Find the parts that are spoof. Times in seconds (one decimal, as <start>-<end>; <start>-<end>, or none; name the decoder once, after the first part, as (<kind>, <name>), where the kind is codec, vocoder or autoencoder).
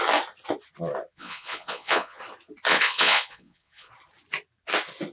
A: 1.1-2.2 (vocoder, Vocos); 2.7-3.9